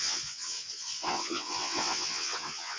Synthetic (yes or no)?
yes